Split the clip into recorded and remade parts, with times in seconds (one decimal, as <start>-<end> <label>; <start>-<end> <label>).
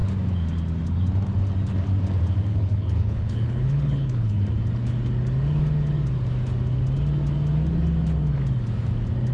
0.0-2.5 recorded; 2.5-4.4 remade; 4.4-9.3 recorded